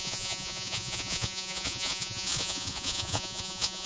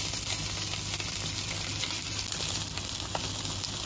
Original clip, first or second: second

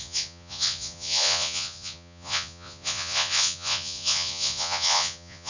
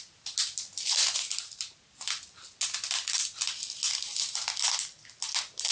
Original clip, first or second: second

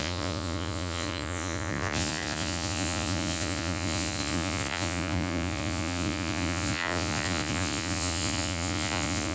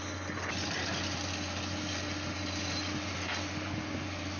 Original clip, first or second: second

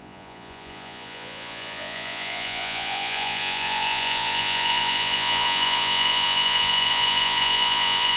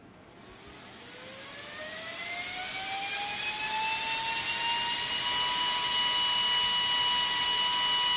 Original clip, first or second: second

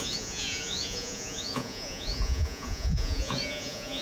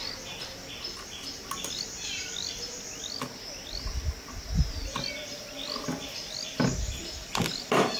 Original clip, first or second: second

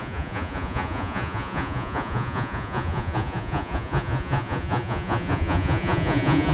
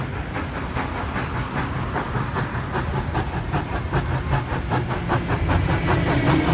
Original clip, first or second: second